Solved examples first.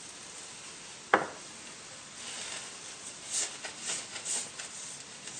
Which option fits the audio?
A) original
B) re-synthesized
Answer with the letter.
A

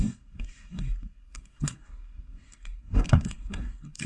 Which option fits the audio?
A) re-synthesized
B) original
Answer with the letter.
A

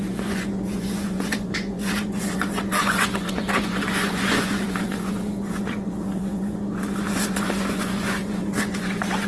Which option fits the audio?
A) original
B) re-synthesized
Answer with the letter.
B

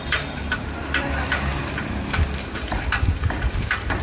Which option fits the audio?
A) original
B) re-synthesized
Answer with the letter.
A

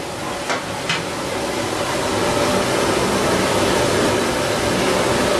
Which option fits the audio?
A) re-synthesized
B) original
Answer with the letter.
B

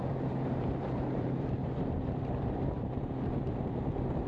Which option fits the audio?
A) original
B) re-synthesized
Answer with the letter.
B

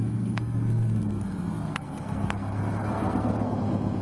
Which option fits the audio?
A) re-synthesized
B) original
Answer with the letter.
A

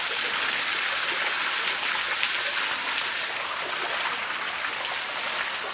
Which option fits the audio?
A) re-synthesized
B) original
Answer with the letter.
B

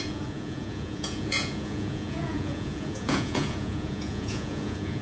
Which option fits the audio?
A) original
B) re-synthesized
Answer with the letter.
B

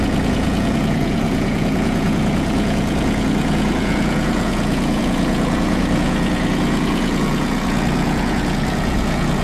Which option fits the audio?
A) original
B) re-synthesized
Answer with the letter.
B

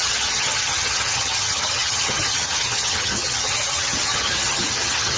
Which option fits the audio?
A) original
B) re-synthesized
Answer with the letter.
B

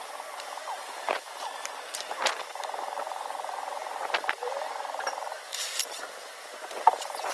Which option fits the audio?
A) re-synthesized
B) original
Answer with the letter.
A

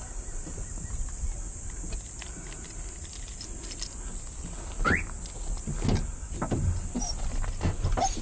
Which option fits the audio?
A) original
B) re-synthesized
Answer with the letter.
A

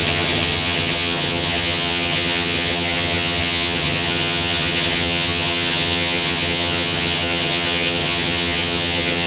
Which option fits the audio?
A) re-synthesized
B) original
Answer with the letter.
A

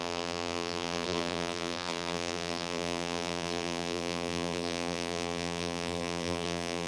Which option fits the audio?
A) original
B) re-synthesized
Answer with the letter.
B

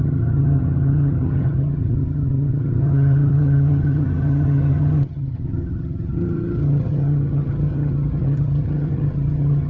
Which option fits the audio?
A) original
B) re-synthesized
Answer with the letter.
B